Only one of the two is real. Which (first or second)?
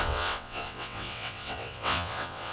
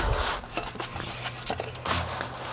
second